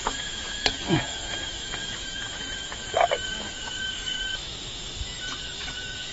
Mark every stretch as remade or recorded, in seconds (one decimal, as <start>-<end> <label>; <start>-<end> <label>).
0.0-6.1 remade